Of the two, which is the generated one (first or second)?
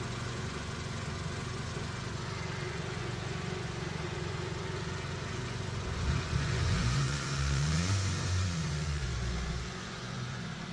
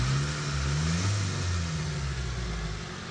first